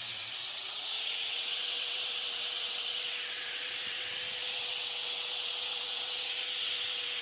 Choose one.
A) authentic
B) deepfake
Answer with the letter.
B